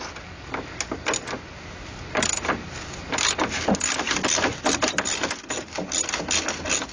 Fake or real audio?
real